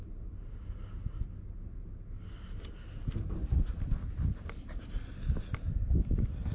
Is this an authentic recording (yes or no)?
yes